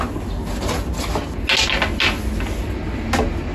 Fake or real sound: real